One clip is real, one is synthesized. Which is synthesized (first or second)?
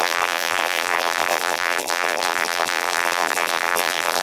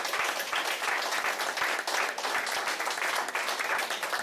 first